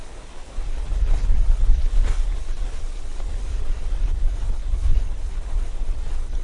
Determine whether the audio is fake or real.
fake